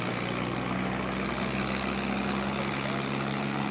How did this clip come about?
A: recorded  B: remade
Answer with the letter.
A